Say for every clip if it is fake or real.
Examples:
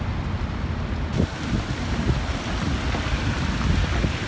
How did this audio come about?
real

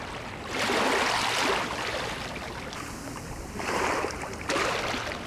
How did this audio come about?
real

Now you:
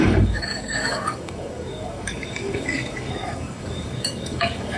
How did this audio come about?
fake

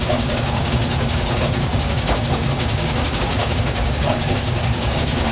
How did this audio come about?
fake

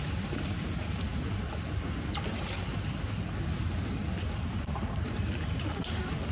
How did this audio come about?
real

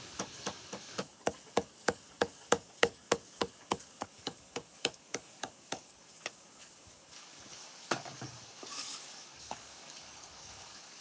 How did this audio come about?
fake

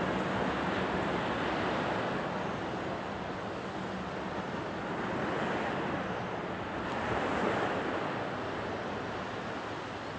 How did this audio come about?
real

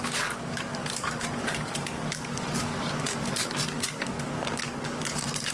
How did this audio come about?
fake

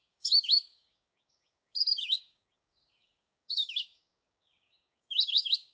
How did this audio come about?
fake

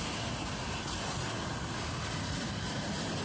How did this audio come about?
real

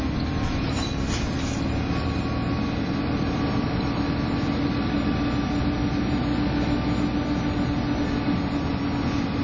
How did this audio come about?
real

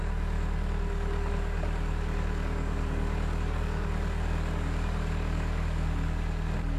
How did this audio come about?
fake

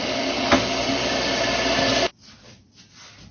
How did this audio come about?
real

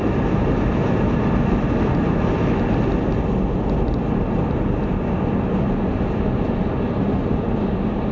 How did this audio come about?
real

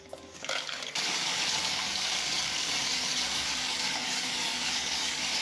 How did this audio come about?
fake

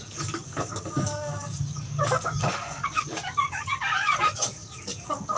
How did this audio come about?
fake